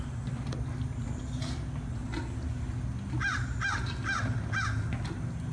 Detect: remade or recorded recorded